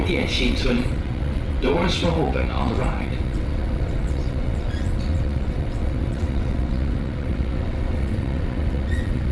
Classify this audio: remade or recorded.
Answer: remade